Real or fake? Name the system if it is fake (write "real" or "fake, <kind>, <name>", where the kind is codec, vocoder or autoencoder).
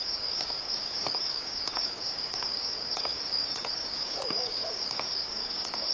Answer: fake, codec, DAC